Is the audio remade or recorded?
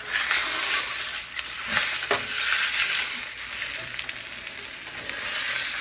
recorded